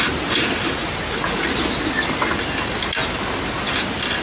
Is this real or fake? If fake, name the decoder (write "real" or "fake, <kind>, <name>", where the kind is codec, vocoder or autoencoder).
real